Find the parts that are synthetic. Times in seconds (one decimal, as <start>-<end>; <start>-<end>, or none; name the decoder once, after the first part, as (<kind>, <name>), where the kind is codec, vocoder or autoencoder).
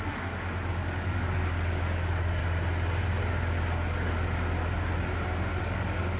0.0-2.4 (codec, DAC); 5.6-6.2